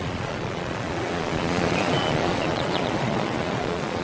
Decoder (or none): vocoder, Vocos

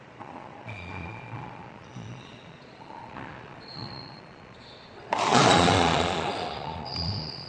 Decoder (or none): vocoder, Vocos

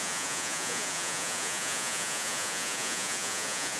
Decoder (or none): vocoder, Vocos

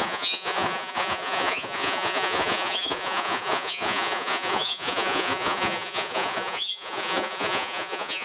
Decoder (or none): vocoder, Vocos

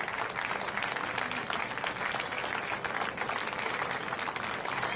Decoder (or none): none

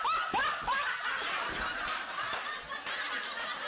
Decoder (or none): none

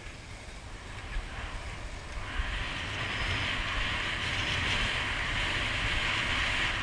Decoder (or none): none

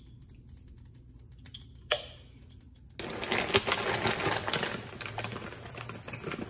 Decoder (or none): none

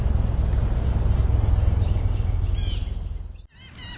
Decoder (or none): none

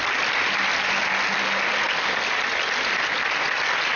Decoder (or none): none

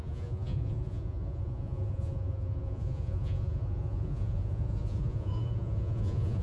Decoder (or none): vocoder, Vocos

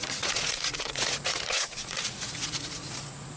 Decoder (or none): vocoder, Vocos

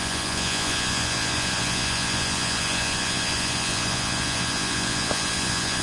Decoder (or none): vocoder, Vocos